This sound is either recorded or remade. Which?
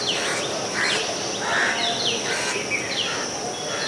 recorded